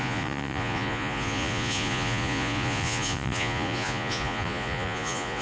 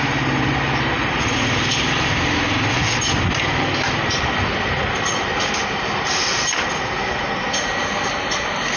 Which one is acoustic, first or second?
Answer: second